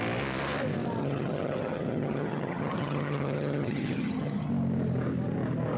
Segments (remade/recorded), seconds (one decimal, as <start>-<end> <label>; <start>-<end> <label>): 0.0-1.0 recorded; 1.0-4.5 remade; 4.5-5.8 recorded